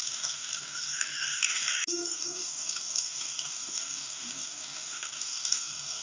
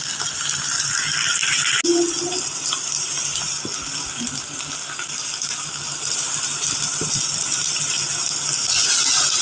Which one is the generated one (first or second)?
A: first